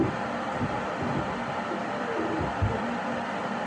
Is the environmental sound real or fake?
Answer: real